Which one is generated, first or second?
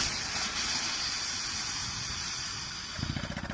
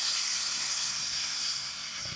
second